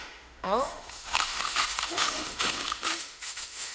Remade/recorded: remade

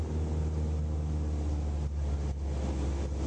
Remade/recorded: recorded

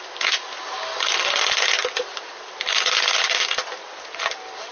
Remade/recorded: recorded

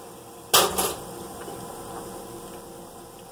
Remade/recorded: recorded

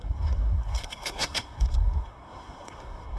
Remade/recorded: remade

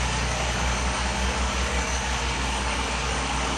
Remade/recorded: remade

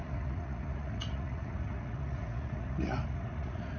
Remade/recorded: remade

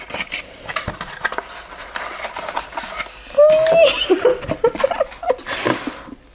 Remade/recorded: recorded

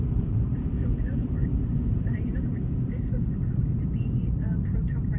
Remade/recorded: remade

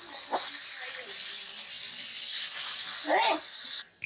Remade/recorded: recorded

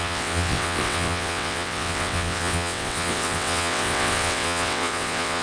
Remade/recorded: remade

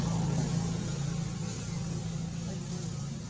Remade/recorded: recorded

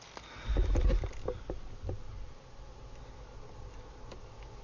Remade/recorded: recorded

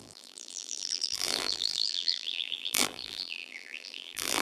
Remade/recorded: remade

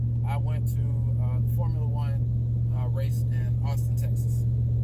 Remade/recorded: recorded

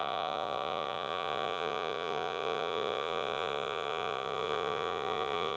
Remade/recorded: remade